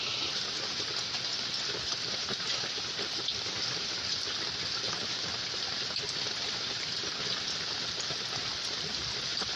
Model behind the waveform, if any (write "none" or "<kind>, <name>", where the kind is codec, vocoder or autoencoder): none